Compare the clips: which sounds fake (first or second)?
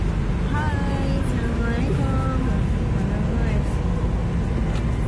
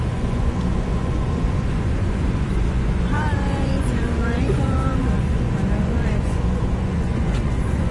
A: second